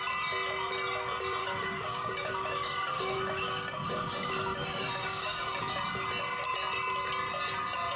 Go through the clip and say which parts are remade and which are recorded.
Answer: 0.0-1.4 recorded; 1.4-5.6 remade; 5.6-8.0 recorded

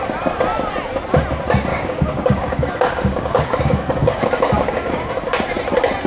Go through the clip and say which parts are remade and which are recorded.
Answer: 0.0-1.7 recorded; 1.7-5.1 remade; 5.1-6.1 recorded

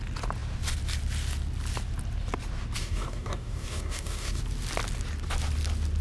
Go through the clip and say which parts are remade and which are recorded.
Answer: 0.0-2.8 recorded; 2.8-4.4 remade; 4.4-6.0 recorded

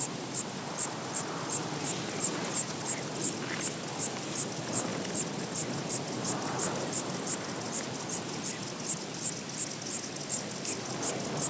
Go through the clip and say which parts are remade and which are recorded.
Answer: 0.0-11.5 recorded

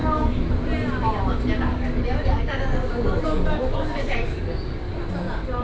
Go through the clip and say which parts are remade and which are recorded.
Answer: 0.0-0.5 remade; 0.5-1.7 recorded; 1.7-5.1 remade; 5.1-5.6 recorded